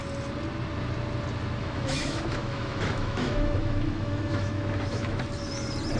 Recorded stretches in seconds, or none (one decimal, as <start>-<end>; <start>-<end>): 0.0-1.6; 5.2-6.0